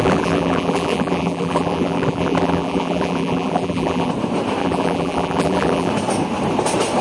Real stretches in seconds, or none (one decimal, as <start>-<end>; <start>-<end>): 4.1-4.6; 5.9-7.0